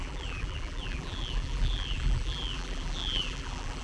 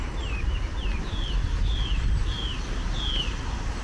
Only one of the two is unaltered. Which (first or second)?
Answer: second